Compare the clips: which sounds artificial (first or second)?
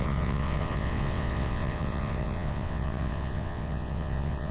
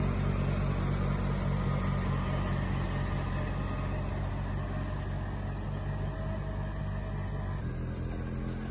first